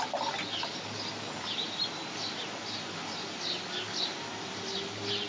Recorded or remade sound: recorded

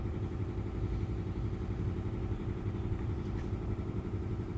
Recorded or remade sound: recorded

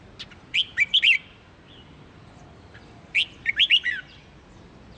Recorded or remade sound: recorded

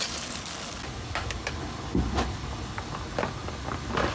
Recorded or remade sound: recorded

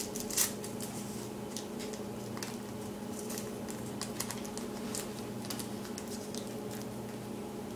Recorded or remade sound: recorded